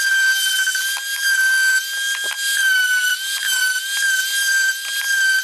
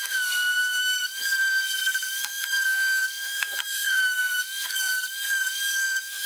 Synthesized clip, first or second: second